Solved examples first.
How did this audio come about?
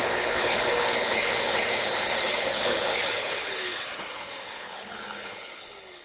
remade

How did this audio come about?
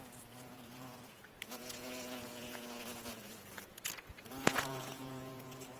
remade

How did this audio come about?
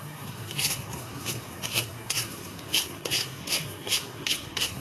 remade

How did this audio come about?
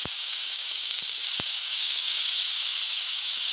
remade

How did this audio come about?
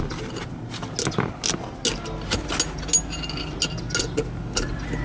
recorded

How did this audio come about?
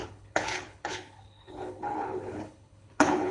remade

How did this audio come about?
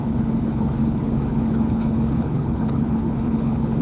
remade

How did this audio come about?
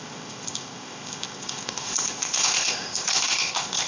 remade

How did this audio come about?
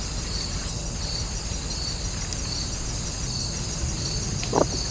recorded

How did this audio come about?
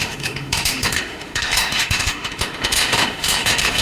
remade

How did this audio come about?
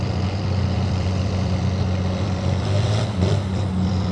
remade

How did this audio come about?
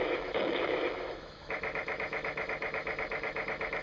remade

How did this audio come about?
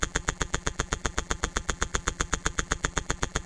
remade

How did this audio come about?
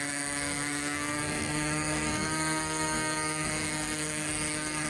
remade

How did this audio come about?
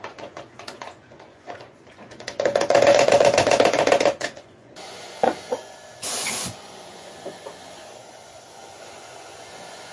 remade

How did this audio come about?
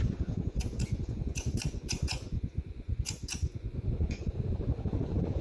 remade